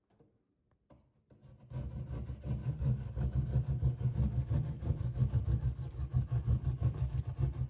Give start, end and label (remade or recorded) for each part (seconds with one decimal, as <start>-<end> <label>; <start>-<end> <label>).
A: 0.0-2.6 recorded; 2.6-7.2 remade; 7.2-7.7 recorded